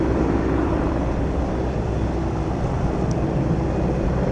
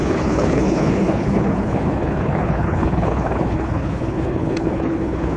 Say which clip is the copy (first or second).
second